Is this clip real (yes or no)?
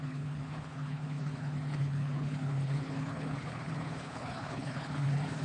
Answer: no